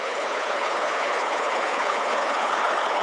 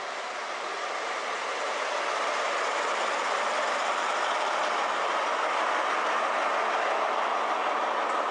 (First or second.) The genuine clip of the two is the second